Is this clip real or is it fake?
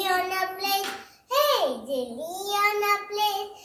real